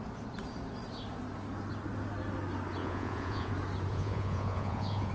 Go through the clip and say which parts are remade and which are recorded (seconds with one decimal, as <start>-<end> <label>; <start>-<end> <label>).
0.0-2.8 recorded; 2.8-3.5 remade; 3.5-3.9 recorded; 3.9-5.1 remade